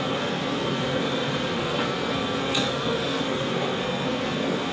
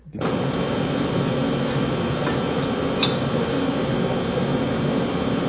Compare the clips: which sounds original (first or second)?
second